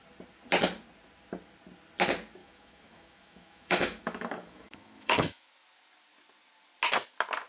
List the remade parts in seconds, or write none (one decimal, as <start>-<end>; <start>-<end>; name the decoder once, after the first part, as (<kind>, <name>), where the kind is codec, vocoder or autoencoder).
2.4-5.5 (autoencoder, DAC-VAE)